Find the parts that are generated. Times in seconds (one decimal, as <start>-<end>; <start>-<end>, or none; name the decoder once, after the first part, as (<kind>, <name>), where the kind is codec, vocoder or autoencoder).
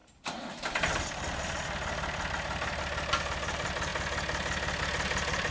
0.0-3.9 (vocoder, BigVGAN v2); 4.8-5.5